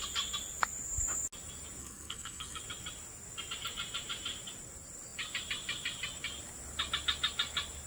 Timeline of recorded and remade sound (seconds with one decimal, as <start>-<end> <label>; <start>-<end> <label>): 0.0-1.8 recorded; 1.8-2.6 remade; 2.6-7.9 recorded